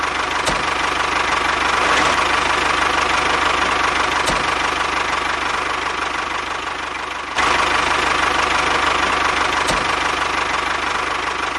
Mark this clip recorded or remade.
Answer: recorded